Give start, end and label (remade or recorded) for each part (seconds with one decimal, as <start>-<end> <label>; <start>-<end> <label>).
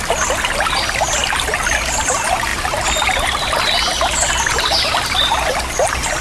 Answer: 0.0-6.2 recorded